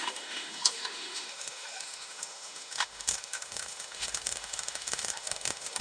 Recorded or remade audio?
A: remade